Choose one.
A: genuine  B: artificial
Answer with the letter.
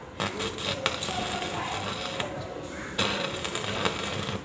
A